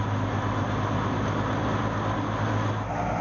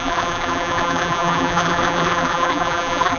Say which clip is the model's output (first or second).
second